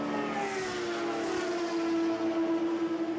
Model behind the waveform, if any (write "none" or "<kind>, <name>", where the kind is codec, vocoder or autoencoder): none